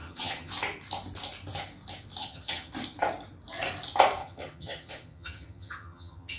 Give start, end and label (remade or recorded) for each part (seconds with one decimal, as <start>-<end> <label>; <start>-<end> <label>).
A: 0.0-0.5 remade; 0.5-2.2 recorded; 2.2-2.7 remade; 2.7-4.2 recorded; 4.2-6.4 remade